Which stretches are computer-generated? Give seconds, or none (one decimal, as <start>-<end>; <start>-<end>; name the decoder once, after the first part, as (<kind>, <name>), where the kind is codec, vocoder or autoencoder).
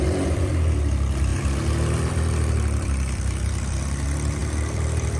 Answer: 0.0-1.3 (vocoder, BigVGAN v2); 2.1-5.2